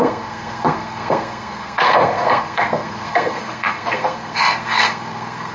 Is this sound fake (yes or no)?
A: yes